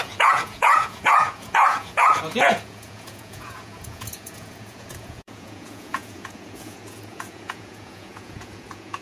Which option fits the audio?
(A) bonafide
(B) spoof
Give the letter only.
B